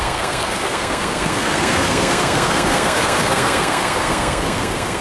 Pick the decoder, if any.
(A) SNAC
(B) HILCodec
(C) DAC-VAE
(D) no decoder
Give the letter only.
A